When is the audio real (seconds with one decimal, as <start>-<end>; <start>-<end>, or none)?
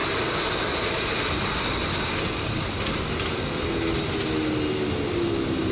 0.0-5.7